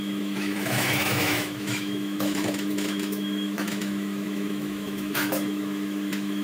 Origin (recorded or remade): remade